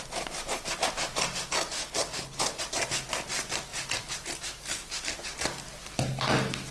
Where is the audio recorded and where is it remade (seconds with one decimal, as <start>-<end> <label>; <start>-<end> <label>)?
0.0-1.8 recorded; 1.8-2.6 remade; 2.6-6.7 recorded